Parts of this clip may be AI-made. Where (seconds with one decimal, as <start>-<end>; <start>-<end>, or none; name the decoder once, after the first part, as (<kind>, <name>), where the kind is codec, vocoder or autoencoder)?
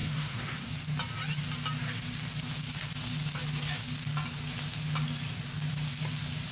0.0-0.7 (codec, SNAC)